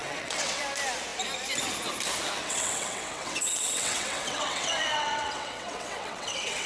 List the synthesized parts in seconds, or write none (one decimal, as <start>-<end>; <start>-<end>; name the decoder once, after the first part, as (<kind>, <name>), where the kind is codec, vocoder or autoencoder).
0.0-0.6 (vocoder, WaveNeXt); 2.4-6.7